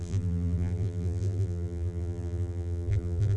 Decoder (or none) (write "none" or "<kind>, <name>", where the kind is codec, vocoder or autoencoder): vocoder, BigVGAN v2